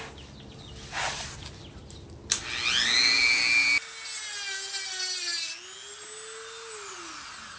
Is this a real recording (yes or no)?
yes